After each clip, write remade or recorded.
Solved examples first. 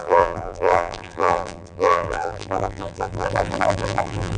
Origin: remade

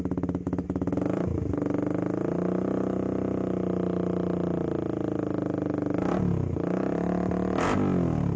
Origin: recorded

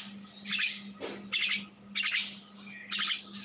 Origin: recorded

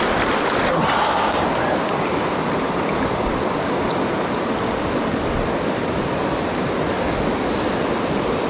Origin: recorded